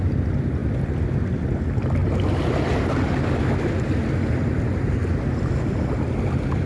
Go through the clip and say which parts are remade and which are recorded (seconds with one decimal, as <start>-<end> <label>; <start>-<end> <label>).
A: 0.0-6.7 recorded